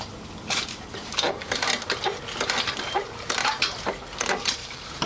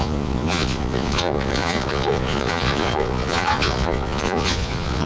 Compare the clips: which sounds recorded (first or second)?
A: first